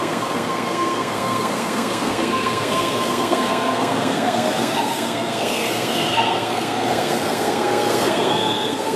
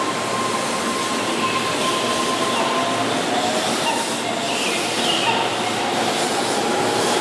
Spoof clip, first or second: first